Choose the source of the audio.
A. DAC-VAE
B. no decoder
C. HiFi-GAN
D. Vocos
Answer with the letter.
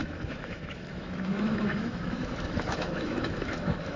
A